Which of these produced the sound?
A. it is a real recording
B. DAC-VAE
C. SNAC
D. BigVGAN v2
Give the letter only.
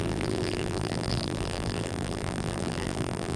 D